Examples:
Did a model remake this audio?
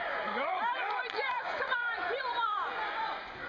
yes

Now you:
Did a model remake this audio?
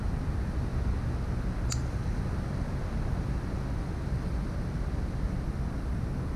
no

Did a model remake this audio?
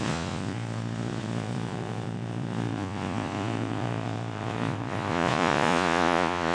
yes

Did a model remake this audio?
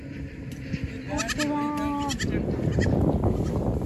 no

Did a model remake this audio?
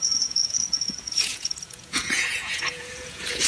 yes